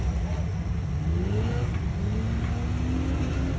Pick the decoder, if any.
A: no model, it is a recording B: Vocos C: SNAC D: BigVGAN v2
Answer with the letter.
A